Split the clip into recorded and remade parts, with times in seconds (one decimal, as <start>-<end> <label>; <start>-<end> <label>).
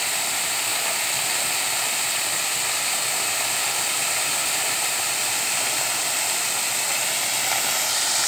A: 0.0-4.4 recorded; 4.4-5.1 remade; 5.1-8.3 recorded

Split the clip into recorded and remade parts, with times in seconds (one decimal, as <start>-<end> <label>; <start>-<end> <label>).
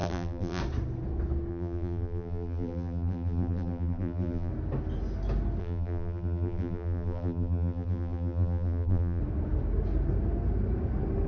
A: 0.0-0.6 remade; 0.6-1.5 recorded; 1.5-4.5 remade; 4.5-5.6 recorded; 5.6-9.2 remade; 9.2-11.3 recorded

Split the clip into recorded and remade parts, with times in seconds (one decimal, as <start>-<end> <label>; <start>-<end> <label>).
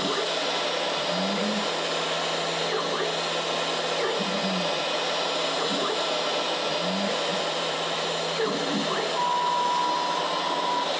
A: 0.0-7.3 recorded; 7.3-8.1 remade; 8.1-11.0 recorded